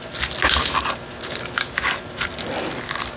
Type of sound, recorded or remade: recorded